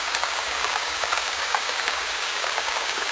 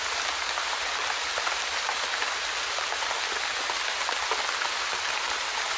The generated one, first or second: first